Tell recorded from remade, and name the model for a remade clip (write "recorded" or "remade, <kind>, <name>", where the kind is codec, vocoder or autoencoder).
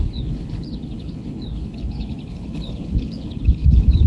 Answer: remade, codec, HILCodec